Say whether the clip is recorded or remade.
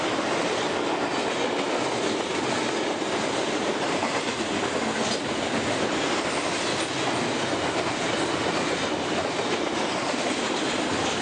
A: recorded